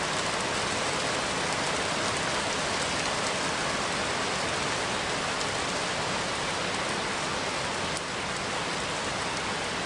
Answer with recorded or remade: recorded